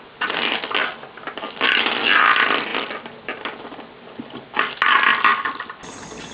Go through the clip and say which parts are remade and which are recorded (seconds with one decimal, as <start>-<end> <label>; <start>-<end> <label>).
0.0-6.3 recorded